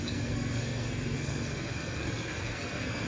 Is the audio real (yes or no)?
no